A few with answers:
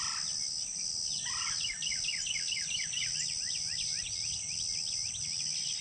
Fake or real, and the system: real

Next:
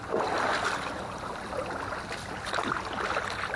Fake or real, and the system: real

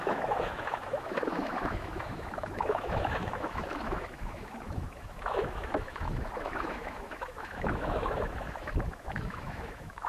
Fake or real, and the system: fake, autoencoder, DAC-VAE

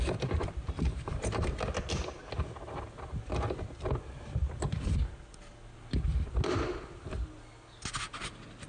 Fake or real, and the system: real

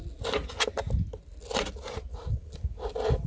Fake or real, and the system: real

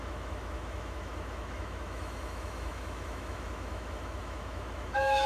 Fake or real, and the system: fake, autoencoder, DAC-VAE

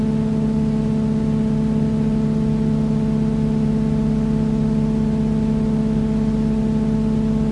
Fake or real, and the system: real